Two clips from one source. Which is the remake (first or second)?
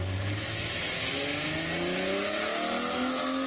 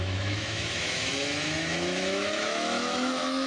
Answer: second